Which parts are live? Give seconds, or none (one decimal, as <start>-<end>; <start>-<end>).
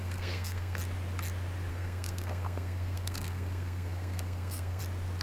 0.8-1.7; 4.8-5.2